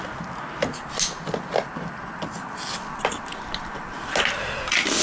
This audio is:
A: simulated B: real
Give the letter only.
B